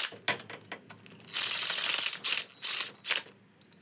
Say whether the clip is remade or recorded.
recorded